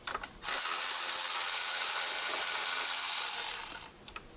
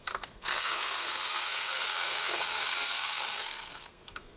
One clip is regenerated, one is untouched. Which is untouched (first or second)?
first